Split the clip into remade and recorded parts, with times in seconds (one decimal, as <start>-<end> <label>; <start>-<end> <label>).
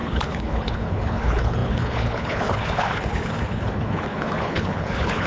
0.0-5.3 remade